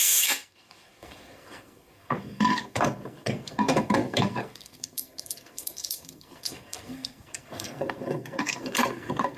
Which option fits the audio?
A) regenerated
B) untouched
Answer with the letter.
A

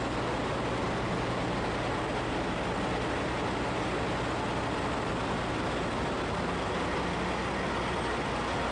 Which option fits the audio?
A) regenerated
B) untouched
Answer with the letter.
B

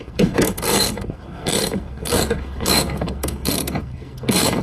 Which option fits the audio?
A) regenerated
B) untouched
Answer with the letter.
A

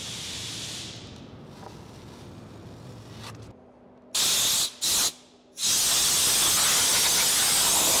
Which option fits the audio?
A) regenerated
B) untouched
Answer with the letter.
B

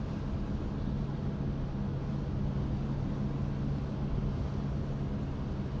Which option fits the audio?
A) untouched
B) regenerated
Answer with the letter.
A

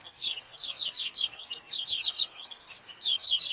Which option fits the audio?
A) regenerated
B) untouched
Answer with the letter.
A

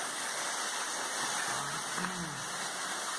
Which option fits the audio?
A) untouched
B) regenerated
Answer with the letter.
A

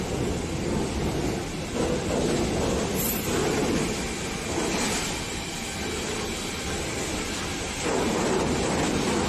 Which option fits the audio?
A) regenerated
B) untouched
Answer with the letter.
B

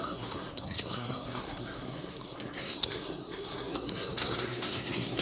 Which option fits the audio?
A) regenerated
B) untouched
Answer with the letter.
A